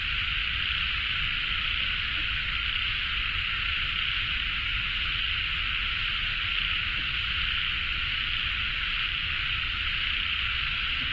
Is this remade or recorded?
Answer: recorded